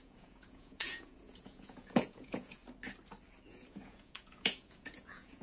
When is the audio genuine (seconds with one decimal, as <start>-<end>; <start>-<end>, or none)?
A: 2.6-3.4